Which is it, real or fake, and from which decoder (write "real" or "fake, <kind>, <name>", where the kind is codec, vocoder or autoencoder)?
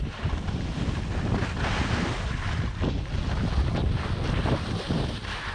real